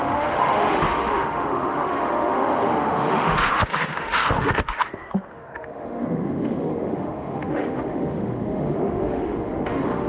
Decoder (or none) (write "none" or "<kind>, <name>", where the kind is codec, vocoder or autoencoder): autoencoder, DAC-VAE